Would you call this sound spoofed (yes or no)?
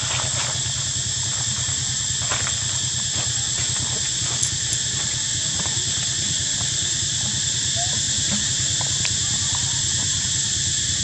no